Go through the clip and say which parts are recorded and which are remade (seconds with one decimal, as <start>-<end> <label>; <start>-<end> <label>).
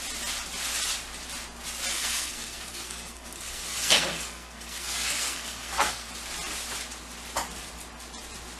0.0-1.9 recorded; 1.9-6.1 remade; 6.1-8.6 recorded